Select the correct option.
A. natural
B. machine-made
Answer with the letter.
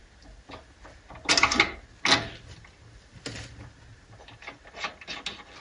A